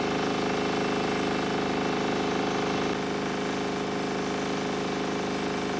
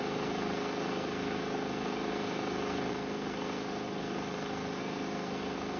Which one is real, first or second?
first